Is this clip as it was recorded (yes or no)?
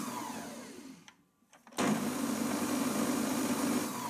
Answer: no